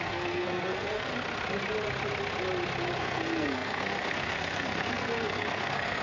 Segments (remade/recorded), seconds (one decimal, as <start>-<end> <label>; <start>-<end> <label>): 0.0-1.1 remade; 1.1-3.0 recorded; 3.0-6.0 remade